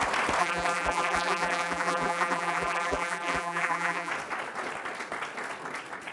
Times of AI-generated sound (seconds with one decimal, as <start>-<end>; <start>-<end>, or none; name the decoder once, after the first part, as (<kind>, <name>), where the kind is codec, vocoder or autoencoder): 0.4-4.1 (vocoder, BigVGAN v2)